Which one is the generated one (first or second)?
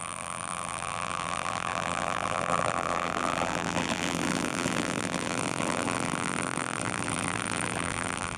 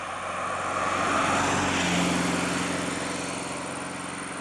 first